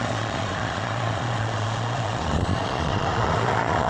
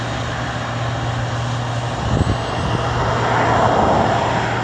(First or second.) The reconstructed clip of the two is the first